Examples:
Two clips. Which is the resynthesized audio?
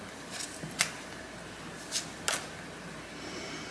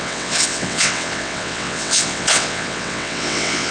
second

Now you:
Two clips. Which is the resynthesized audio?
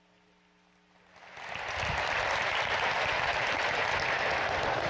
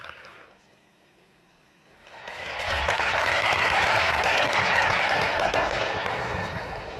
second